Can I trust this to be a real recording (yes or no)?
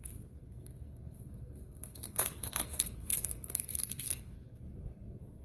no